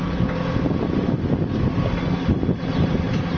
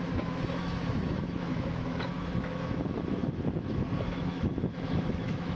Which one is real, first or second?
first